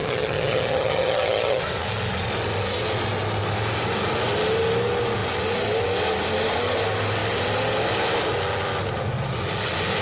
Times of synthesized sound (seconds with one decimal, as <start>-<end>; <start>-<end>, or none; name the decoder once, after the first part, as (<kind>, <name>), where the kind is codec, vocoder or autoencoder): 0.0-1.6 (vocoder, HiFi-GAN)